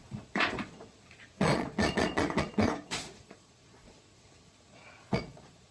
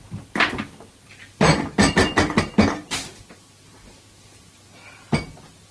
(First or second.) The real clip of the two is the second